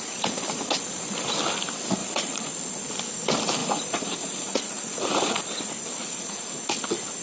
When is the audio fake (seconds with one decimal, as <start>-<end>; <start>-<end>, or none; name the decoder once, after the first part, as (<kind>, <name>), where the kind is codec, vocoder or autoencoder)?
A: 2.0-2.5 (vocoder, Vocos); 3.6-5.4; 6.0-6.6